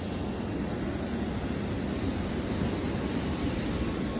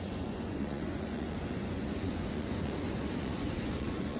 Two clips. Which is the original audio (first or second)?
first